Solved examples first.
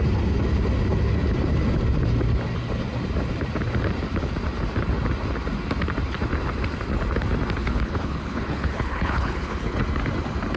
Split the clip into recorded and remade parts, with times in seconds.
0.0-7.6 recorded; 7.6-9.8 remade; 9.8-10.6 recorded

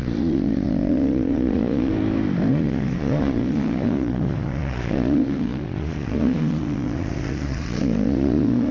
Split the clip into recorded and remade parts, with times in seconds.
0.0-1.9 remade; 1.9-2.5 recorded; 2.5-8.7 remade

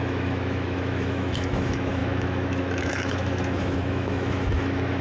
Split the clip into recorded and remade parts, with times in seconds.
0.0-5.0 remade

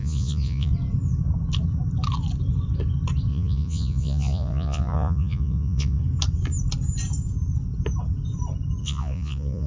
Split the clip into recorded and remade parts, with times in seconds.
0.0-0.7 remade; 0.7-3.3 recorded; 3.3-6.0 remade; 6.0-8.8 recorded; 8.8-9.7 remade

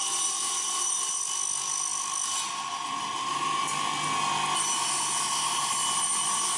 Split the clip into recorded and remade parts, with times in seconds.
0.0-1.2 remade; 1.2-6.6 recorded

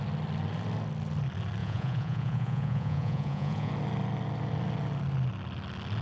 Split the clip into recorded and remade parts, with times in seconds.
0.0-1.6 recorded; 1.6-3.7 remade; 3.7-6.0 recorded

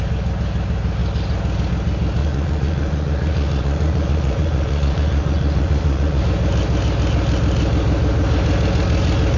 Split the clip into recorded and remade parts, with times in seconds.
0.0-2.2 recorded; 2.2-6.2 remade; 6.2-9.4 recorded